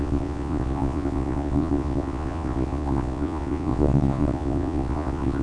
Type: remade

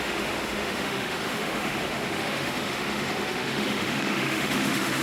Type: remade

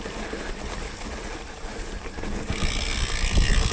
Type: recorded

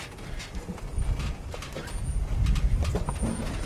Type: recorded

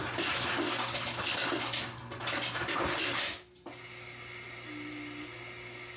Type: recorded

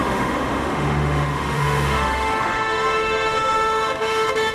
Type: remade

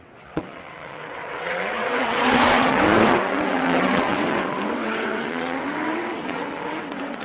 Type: remade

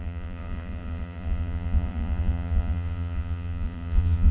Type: remade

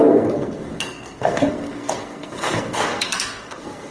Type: remade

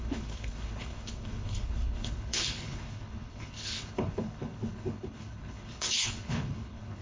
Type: remade